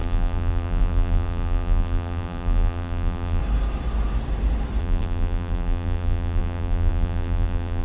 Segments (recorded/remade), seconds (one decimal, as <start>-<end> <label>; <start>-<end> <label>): 0.0-3.4 remade; 3.4-4.8 recorded; 4.8-7.8 remade